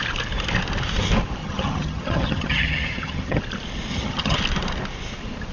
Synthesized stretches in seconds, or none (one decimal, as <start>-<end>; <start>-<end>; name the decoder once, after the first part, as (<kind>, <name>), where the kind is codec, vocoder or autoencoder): 1.4-3.4 (vocoder, HiFi-GAN); 3.9-4.4